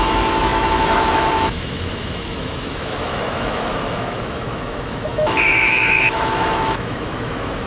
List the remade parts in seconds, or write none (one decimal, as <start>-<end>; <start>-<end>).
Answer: 0.0-7.7